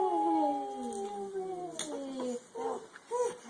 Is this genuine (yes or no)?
yes